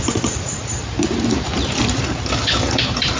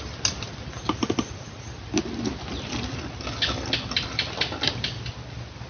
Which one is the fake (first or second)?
first